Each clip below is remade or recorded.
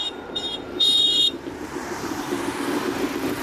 remade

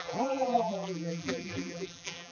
remade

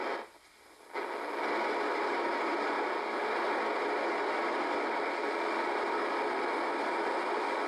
recorded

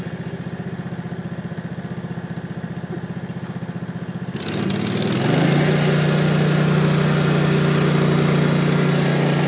recorded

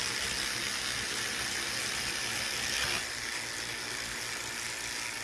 recorded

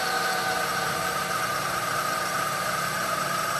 remade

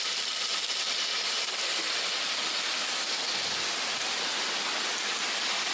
recorded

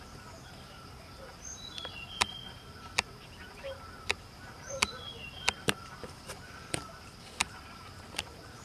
remade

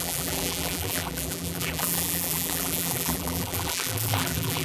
remade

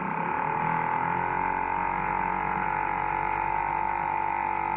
recorded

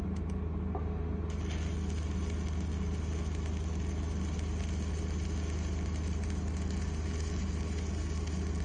recorded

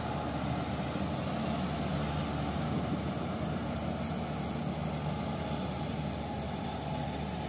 recorded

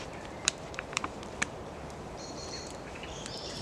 remade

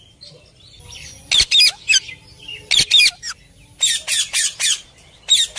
recorded